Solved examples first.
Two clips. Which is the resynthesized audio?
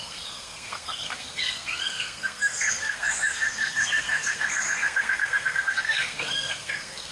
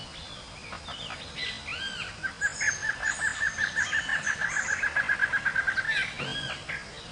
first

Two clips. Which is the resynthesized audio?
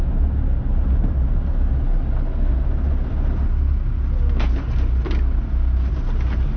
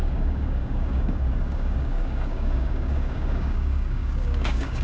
second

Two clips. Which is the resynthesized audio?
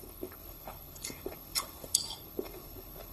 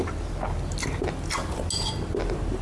first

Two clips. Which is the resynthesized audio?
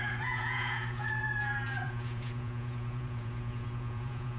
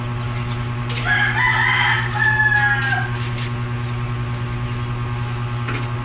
first